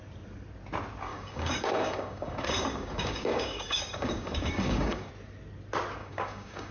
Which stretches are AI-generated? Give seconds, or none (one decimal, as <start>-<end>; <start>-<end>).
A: 1.1-5.1; 6.0-6.7